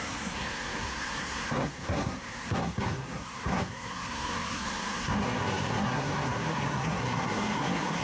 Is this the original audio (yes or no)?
no